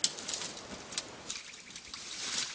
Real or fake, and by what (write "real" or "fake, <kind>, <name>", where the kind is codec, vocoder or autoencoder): real